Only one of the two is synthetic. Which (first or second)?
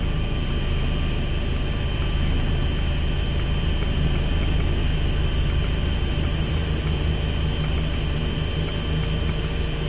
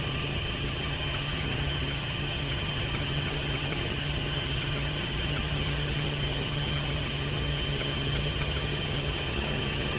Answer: second